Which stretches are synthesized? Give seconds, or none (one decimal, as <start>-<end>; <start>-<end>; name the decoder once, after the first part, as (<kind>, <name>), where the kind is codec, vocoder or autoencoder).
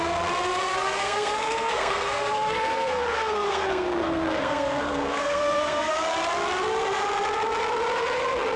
0.7-5.9 (codec, SNAC)